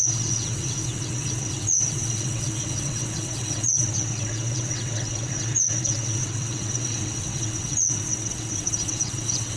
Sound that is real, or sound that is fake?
fake